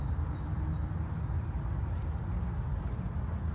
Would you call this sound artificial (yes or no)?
no